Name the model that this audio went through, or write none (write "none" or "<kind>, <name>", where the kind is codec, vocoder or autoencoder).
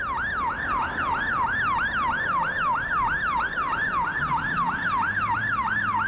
none